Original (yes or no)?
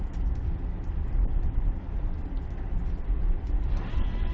no